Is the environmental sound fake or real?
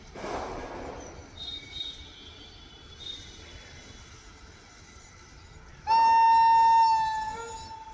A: real